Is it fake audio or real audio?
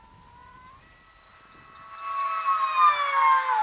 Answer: real